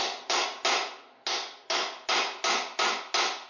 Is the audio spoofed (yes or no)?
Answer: no